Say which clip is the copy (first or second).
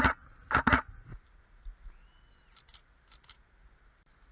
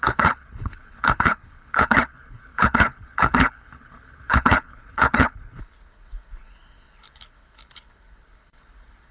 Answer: second